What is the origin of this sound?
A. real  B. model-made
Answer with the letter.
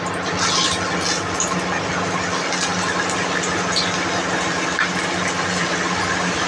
A